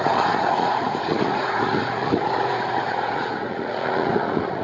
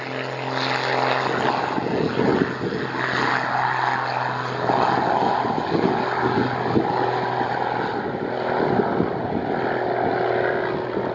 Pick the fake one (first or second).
first